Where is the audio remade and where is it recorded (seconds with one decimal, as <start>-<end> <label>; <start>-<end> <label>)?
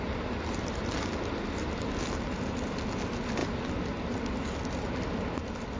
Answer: 0.0-5.8 recorded